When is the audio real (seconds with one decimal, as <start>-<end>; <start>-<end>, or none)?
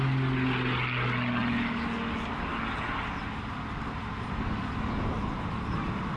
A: 0.0-6.2